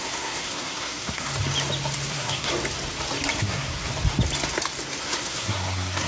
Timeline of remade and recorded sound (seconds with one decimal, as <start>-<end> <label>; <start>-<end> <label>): 0.0-1.3 remade; 1.3-2.1 recorded; 2.1-2.5 remade; 2.5-3.4 recorded; 3.4-3.9 remade; 3.9-5.0 recorded; 5.0-6.1 remade